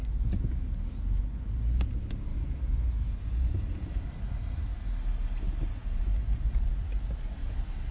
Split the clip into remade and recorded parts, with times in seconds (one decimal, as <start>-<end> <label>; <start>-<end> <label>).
0.0-7.9 recorded